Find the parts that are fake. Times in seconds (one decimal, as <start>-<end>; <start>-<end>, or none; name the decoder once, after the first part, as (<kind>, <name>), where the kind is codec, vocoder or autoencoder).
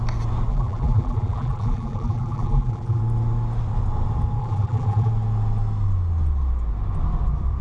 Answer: 0.5-3.0 (vocoder, BigVGAN v2); 4.4-5.1